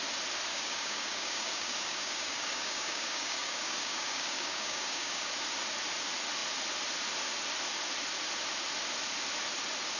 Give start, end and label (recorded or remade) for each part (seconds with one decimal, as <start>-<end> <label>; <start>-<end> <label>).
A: 0.0-0.5 recorded; 0.5-5.3 remade; 5.3-10.0 recorded